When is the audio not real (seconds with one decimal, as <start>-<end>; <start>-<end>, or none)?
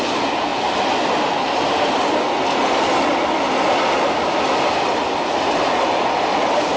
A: none